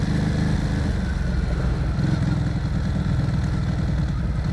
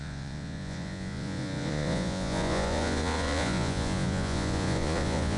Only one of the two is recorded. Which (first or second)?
first